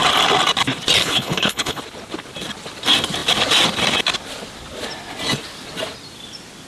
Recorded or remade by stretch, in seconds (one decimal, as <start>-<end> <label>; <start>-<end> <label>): 0.0-1.0 recorded; 1.0-1.8 remade; 1.8-6.7 recorded